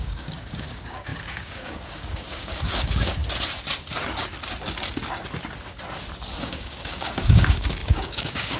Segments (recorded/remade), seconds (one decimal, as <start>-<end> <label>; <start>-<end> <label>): 0.0-3.2 remade; 3.2-6.4 recorded; 6.4-8.6 remade